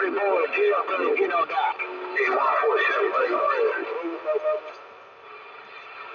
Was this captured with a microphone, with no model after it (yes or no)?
yes